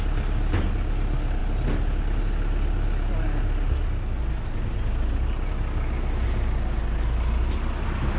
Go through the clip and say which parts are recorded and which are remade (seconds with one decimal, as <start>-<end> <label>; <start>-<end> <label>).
0.0-8.2 recorded